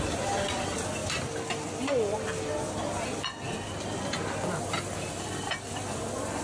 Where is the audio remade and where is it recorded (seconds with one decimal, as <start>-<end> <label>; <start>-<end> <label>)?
0.0-6.4 recorded